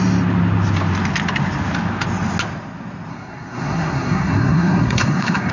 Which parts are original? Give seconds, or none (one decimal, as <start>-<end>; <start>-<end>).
0.0-3.1